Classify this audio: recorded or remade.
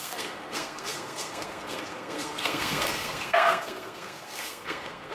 remade